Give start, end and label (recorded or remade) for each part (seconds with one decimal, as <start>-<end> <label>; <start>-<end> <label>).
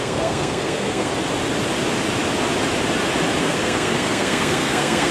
0.0-1.1 remade; 1.1-3.4 recorded; 3.4-5.1 remade